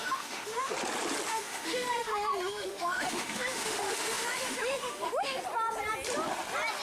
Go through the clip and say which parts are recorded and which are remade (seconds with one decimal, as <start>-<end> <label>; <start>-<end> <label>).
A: 0.0-0.7 remade; 0.7-1.3 recorded; 1.3-5.4 remade; 5.4-6.8 recorded